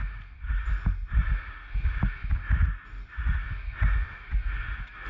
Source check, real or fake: real